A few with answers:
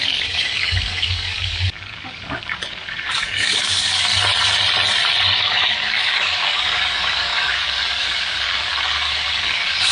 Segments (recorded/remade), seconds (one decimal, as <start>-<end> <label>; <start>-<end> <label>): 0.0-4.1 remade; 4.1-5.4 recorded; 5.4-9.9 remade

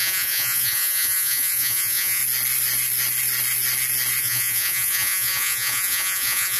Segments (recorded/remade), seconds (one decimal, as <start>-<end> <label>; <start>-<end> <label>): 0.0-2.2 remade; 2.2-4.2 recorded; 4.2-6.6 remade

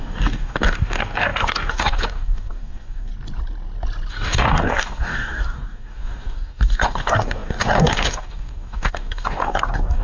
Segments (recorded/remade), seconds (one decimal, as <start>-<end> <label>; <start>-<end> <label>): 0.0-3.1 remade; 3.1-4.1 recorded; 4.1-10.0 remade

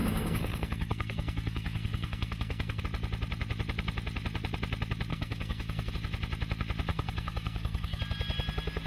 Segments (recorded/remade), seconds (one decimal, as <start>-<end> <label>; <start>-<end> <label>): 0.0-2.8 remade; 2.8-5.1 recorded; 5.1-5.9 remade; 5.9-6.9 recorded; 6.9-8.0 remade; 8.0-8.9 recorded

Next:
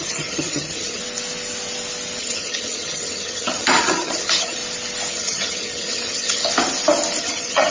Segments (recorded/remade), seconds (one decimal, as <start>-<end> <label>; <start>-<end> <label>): 0.0-1.0 remade; 1.0-2.2 recorded; 2.2-4.6 remade; 4.6-5.1 recorded; 5.1-6.4 remade; 6.4-7.2 recorded; 7.2-7.7 remade

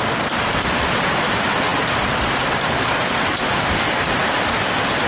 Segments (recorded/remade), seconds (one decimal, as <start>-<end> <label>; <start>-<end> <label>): 0.0-5.1 remade

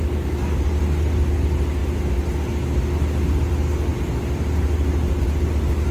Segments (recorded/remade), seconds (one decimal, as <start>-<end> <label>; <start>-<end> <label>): 0.0-5.9 recorded